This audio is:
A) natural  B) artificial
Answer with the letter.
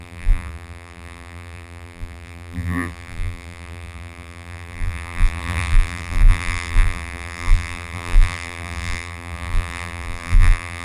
B